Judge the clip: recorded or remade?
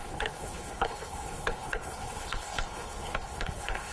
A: remade